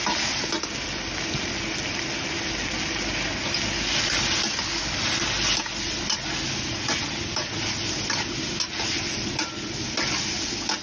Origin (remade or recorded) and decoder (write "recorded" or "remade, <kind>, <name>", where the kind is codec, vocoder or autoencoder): recorded